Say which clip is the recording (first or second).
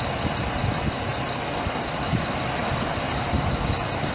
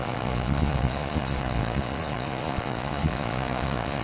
first